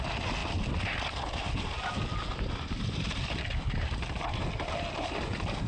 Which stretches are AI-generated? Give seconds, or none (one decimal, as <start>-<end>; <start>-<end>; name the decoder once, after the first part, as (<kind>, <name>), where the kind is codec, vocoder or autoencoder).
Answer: none